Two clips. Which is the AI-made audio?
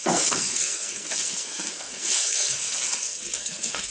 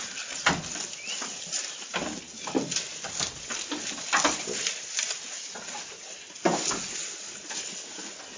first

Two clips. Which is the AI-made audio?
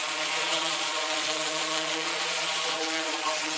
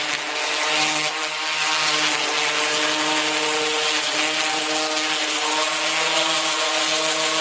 first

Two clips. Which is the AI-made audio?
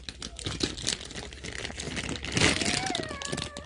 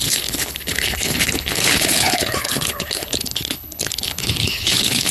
second